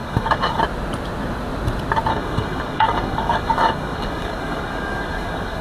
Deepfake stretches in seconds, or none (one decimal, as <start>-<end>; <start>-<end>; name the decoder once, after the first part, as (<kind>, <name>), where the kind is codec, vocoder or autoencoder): 0.0-0.6 (codec, DAC); 2.1-5.6